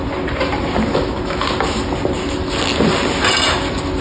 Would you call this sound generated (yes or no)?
no